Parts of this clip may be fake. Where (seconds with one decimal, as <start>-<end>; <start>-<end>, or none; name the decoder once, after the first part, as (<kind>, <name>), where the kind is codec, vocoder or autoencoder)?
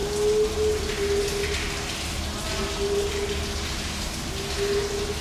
none